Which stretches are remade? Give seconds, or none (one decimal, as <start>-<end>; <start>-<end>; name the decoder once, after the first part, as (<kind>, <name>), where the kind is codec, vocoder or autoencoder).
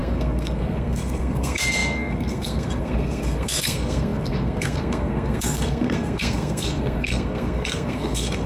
0.0-8.5 (codec, SNAC)